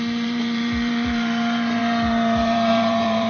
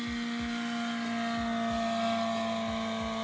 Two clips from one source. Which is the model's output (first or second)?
first